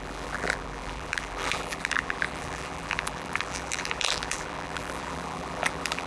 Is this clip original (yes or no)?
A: no